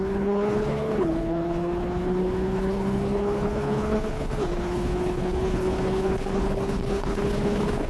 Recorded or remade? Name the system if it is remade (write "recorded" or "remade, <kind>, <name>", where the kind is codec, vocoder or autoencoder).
remade, codec, HILCodec